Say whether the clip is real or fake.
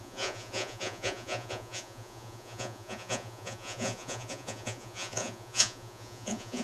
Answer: fake